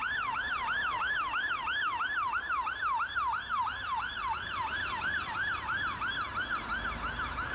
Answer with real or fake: real